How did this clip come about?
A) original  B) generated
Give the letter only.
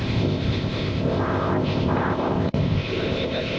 B